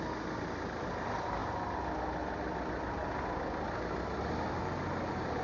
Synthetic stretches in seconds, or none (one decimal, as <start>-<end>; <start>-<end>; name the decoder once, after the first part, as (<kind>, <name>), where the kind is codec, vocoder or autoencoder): none

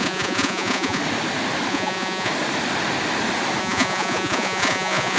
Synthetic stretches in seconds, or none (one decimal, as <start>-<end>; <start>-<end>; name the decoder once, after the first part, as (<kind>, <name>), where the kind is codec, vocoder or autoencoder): 0.0-1.0 (vocoder, Vocos); 1.7-2.3; 3.6-5.2

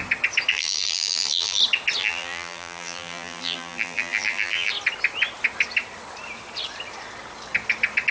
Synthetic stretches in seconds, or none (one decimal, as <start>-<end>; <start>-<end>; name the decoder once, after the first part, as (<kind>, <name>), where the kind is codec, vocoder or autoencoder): 0.5-1.6 (vocoder, BigVGAN v2); 2.0-4.7

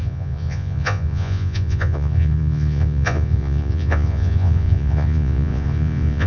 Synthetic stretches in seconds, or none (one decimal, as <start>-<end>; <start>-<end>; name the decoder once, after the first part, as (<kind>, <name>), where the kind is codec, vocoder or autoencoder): 0.0-6.3 (vocoder, Vocos)

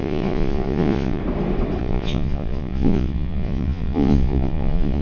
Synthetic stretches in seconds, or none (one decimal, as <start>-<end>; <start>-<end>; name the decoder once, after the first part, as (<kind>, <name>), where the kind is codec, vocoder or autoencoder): 0.0-1.2 (vocoder, Vocos); 1.8-5.0